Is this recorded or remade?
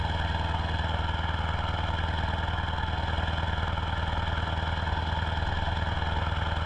recorded